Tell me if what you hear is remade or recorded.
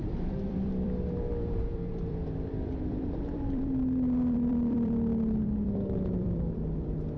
remade